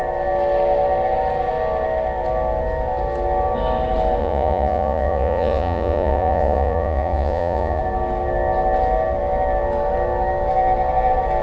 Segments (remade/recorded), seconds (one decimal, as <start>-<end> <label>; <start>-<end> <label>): 0.0-4.2 recorded; 4.2-7.8 remade; 7.8-11.4 recorded